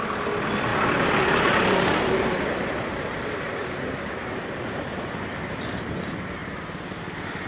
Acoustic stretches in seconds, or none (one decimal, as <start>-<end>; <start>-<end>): 0.0-0.7; 5.2-7.5